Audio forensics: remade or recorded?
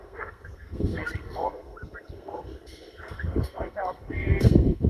remade